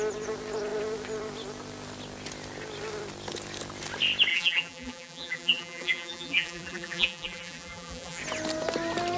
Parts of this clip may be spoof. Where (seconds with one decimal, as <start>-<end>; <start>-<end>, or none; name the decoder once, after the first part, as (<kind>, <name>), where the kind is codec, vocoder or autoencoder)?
4.3-8.2 (vocoder, BigVGAN v2)